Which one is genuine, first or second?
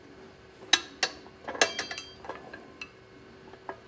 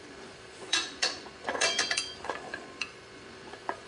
first